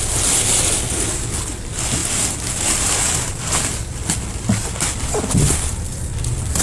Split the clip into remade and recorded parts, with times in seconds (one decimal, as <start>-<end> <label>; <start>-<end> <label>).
0.0-6.6 recorded